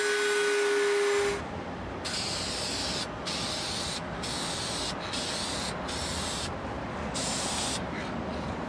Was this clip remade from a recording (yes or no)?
no